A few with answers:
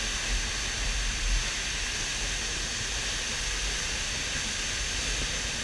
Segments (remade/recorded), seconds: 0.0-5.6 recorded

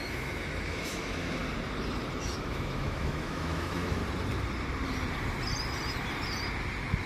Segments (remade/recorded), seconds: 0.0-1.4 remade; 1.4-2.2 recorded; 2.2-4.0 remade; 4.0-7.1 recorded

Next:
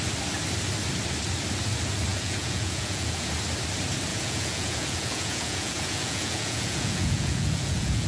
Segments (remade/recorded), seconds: 0.0-2.1 recorded; 2.1-3.3 remade; 3.3-4.1 recorded; 4.1-8.1 remade

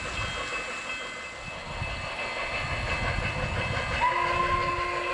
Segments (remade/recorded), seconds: 0.0-5.1 recorded

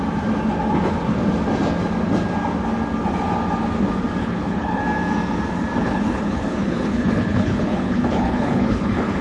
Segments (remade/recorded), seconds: 0.0-4.2 recorded; 4.2-4.8 remade; 4.8-5.8 recorded; 5.8-9.2 remade

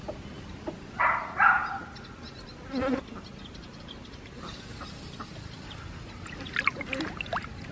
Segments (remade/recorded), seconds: 0.0-7.7 recorded